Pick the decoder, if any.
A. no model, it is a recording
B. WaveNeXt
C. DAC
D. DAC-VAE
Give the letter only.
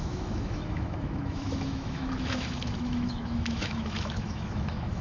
D